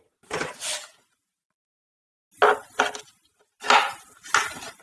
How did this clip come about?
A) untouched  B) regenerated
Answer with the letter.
A